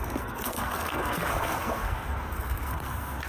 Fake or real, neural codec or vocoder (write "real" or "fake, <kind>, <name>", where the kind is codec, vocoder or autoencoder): fake, codec, SNAC